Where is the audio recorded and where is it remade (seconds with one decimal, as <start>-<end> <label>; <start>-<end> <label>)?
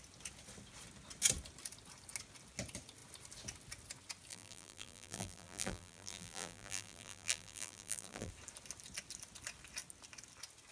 0.0-4.3 recorded; 4.3-8.3 remade; 8.3-10.7 recorded